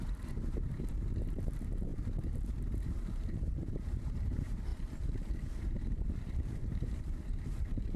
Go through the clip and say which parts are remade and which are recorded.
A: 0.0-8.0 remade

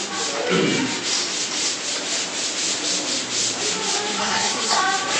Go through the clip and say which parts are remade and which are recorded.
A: 0.0-4.2 recorded; 4.2-4.8 remade; 4.8-5.2 recorded

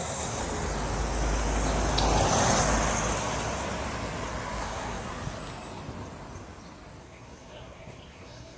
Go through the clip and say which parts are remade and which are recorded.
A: 0.0-0.4 remade; 0.4-4.6 recorded; 4.6-5.1 remade; 5.1-7.0 recorded; 7.0-8.6 remade

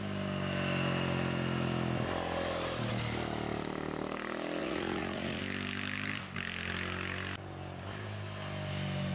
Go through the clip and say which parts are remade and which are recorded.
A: 0.0-4.6 recorded; 4.6-5.4 remade; 5.4-9.1 recorded

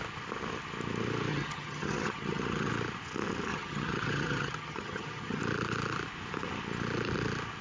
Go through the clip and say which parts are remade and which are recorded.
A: 0.0-1.3 recorded; 1.3-2.7 remade; 2.7-3.5 recorded; 3.5-5.4 remade; 5.4-7.6 recorded

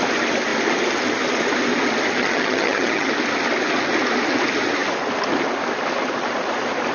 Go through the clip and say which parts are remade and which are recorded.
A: 0.0-2.2 recorded; 2.2-3.1 remade; 3.1-6.9 recorded